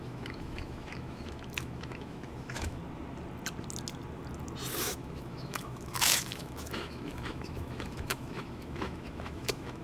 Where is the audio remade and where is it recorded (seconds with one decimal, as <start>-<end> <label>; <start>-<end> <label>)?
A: 0.0-2.8 remade; 2.8-4.8 recorded; 4.8-9.8 remade